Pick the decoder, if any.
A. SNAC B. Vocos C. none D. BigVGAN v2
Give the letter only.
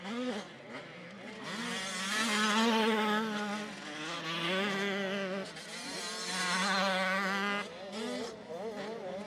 C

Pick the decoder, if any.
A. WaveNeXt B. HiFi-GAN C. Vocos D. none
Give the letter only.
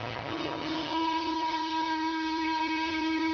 B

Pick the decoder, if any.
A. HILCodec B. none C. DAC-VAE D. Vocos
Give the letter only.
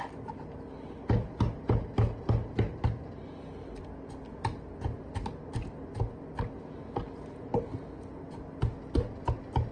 B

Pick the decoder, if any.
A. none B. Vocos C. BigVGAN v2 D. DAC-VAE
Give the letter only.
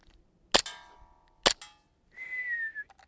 A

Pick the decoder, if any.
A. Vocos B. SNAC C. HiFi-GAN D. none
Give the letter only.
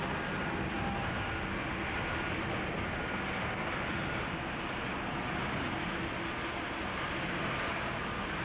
D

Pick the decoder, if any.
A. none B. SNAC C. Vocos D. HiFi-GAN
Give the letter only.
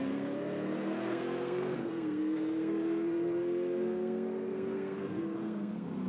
B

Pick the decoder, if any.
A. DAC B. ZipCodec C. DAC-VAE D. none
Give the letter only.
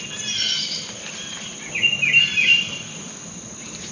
D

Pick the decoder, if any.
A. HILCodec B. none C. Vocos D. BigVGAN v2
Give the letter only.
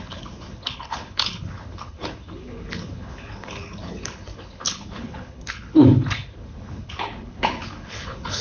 A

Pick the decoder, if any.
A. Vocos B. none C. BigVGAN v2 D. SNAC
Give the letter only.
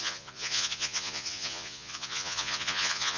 A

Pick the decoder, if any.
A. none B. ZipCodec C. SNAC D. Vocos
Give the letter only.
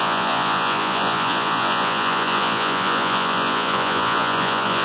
D